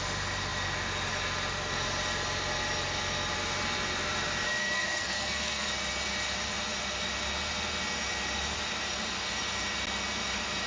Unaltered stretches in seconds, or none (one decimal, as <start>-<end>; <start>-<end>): 0.0-4.6; 5.7-10.7